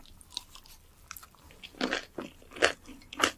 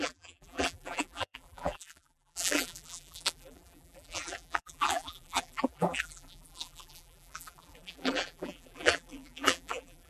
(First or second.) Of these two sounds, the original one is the first